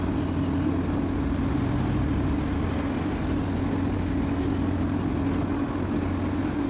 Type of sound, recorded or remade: recorded